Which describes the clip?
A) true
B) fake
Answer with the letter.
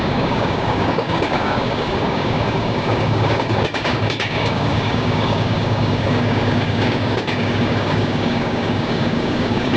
B